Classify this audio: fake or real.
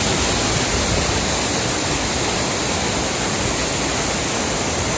real